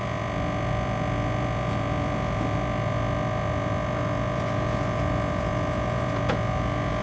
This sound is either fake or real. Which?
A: fake